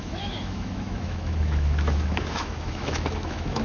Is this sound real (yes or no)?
no